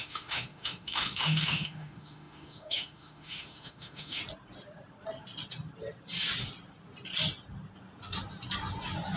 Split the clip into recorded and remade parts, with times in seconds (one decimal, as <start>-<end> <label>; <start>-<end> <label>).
0.0-4.2 remade; 4.2-9.2 recorded